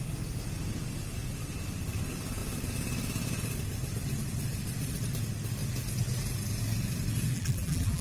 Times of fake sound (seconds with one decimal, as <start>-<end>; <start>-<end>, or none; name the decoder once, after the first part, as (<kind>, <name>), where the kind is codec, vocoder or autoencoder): 7.3-8.0 (vocoder, BigVGAN v2)